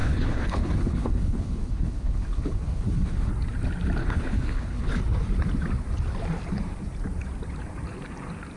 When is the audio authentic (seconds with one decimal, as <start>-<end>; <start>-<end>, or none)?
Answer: 3.3-4.0; 5.0-8.6